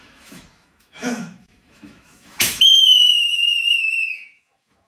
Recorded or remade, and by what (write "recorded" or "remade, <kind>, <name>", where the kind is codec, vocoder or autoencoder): remade, autoencoder, DAC-VAE